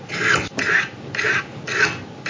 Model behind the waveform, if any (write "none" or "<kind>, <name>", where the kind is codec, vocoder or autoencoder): none